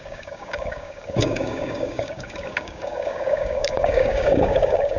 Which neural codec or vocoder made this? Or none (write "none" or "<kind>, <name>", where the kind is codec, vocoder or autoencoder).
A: codec, DAC